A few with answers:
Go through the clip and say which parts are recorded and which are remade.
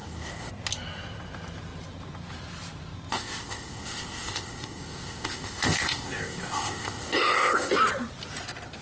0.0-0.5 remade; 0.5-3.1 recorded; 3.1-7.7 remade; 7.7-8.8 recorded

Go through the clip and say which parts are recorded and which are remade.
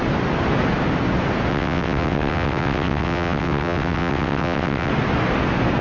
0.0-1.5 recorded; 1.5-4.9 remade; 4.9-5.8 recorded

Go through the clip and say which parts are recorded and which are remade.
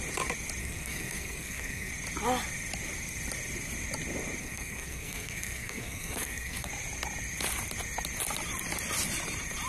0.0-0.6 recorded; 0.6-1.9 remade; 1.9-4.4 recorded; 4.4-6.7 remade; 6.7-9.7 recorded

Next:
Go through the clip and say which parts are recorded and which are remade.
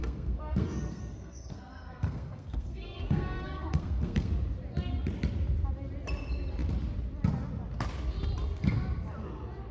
0.0-4.3 remade; 4.3-9.7 recorded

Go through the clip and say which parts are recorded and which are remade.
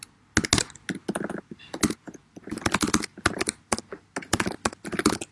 0.0-5.3 recorded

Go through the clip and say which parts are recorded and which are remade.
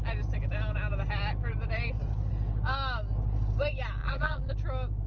0.0-4.0 recorded; 4.0-4.5 remade; 4.5-5.1 recorded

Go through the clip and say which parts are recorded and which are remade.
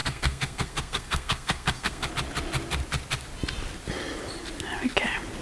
0.0-2.1 remade; 2.1-5.4 recorded